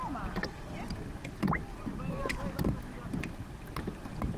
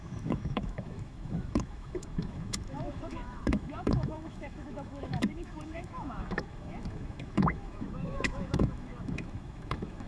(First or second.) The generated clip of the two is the second